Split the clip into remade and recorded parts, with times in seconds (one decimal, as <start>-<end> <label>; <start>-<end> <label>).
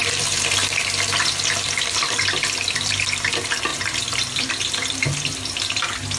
0.0-3.3 remade; 3.3-3.7 recorded; 3.7-5.7 remade; 5.7-6.2 recorded